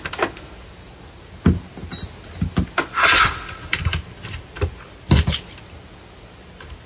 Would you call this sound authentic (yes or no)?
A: yes